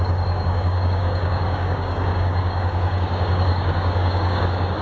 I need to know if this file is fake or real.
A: fake